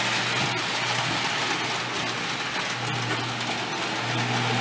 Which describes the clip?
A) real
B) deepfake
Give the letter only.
A